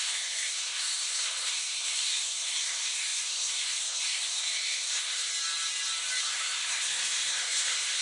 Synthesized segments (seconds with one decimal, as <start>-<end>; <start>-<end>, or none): 0.0-5.3; 6.2-8.0